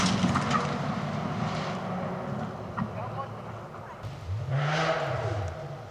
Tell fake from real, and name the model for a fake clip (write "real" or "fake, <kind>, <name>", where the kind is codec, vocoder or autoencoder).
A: real